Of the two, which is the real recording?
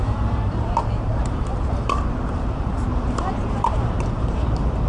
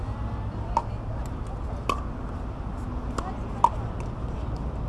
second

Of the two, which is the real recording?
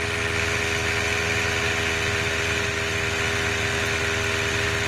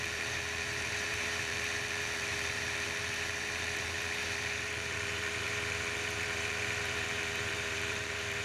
first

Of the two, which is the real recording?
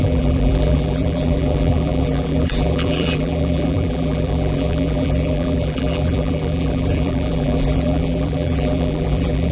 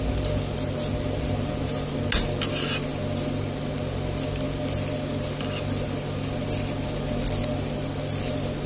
second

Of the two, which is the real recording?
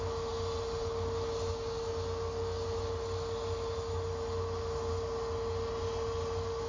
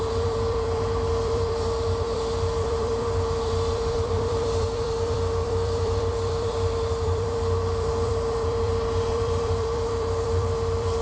first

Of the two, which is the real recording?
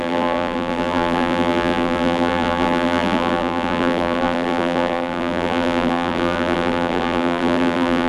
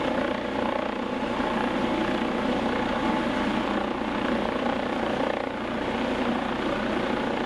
second